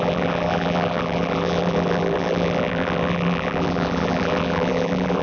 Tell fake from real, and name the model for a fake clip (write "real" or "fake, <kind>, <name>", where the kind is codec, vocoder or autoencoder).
fake, vocoder, BigVGAN v2